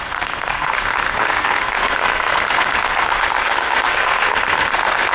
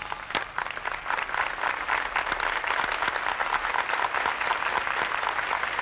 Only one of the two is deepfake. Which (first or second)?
first